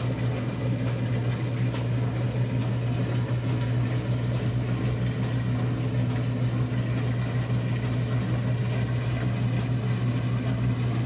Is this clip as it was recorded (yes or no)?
yes